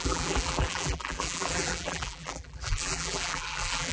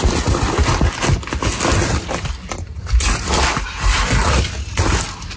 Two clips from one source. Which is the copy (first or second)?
first